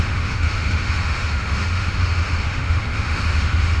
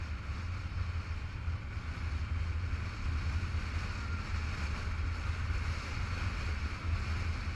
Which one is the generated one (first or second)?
first